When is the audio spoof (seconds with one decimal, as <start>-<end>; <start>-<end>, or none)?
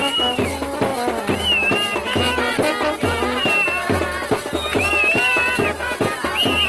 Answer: none